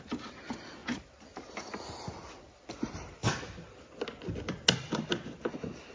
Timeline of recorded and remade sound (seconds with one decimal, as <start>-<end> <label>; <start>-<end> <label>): 0.0-5.9 recorded